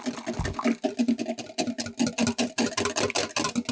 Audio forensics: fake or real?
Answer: real